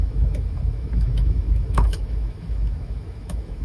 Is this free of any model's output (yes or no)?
no